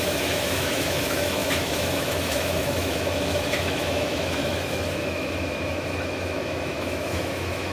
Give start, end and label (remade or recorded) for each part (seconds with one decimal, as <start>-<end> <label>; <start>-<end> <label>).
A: 0.0-7.7 remade

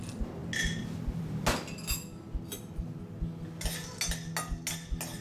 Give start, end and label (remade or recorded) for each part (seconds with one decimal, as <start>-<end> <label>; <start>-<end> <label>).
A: 0.0-5.2 recorded

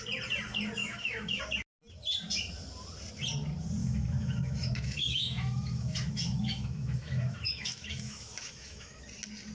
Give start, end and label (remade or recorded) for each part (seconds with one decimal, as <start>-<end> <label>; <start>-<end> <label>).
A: 0.0-0.8 recorded; 0.8-1.4 remade; 1.4-3.8 recorded; 3.8-9.0 remade; 9.0-9.5 recorded

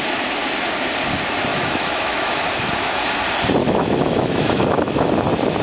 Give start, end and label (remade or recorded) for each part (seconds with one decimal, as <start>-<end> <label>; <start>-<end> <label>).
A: 0.0-1.5 recorded; 1.5-2.4 remade; 2.4-3.6 recorded; 3.6-5.1 remade; 5.1-5.6 recorded

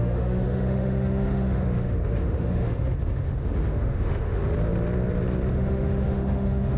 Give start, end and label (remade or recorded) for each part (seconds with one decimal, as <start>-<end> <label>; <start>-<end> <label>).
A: 0.0-4.4 remade; 4.4-5.5 recorded; 5.5-6.8 remade